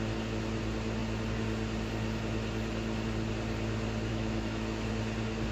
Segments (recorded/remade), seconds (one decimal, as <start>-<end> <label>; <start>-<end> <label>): 0.0-4.1 recorded; 4.1-4.9 remade; 4.9-5.5 recorded